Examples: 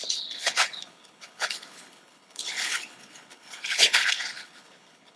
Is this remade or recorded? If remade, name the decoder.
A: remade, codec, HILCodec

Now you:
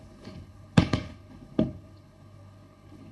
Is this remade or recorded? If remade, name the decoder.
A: remade, codec, HILCodec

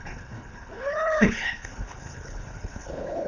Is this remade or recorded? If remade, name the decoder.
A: remade, codec, HILCodec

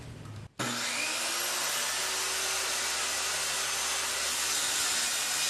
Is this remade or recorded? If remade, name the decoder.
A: recorded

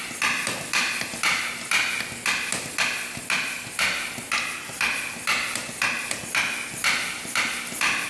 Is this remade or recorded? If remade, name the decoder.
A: recorded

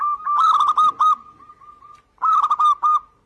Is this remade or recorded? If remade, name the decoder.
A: recorded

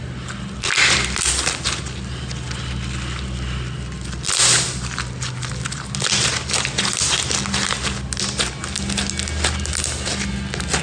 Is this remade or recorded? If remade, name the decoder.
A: recorded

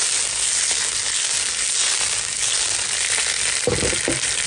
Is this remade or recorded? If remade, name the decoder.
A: recorded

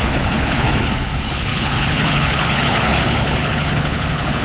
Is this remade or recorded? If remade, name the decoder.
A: remade, codec, HILCodec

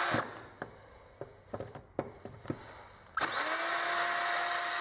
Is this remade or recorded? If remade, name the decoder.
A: recorded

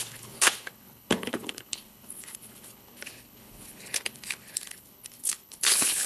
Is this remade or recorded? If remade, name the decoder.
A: remade, codec, HILCodec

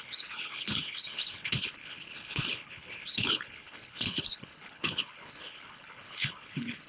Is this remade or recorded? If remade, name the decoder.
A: remade, codec, HILCodec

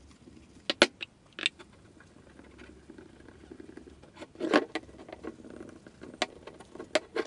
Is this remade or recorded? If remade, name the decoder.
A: recorded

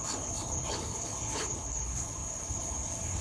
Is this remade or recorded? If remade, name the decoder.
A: remade, codec, HILCodec